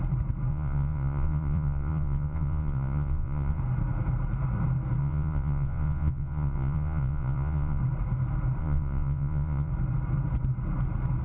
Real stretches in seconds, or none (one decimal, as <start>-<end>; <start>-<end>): 0.0-0.5; 3.6-5.0; 7.8-8.6; 9.7-11.2